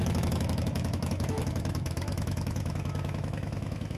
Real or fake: fake